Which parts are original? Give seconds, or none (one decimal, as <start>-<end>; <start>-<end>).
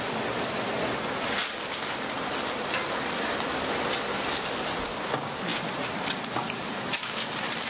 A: 0.0-7.7